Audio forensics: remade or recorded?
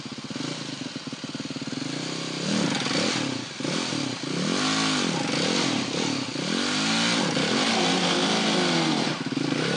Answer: recorded